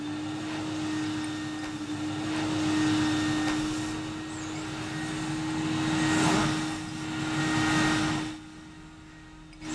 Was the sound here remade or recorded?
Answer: recorded